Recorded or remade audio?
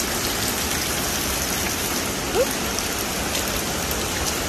recorded